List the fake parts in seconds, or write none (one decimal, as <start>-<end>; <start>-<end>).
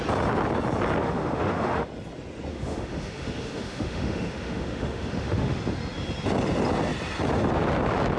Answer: 1.0-1.9; 2.5-5.6